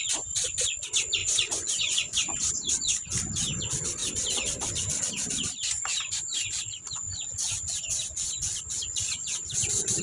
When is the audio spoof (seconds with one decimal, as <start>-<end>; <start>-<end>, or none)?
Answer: 1.2-2.7